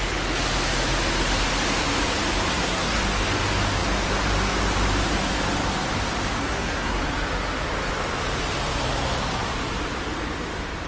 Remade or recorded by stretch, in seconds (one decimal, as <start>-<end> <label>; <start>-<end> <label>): 0.0-2.5 recorded; 2.5-3.0 remade; 3.0-6.4 recorded; 6.4-7.0 remade; 7.0-10.9 recorded